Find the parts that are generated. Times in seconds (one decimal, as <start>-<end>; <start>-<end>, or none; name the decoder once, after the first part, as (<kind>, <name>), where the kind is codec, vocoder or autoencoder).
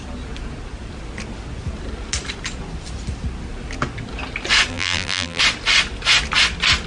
4.7-5.4 (vocoder, BigVGAN v2)